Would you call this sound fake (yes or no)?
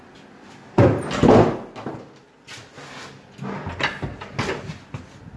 no